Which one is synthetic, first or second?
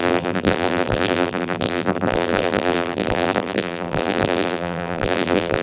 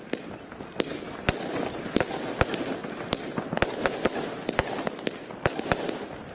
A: first